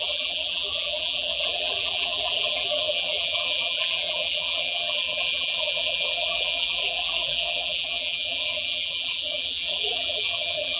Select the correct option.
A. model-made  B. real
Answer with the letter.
A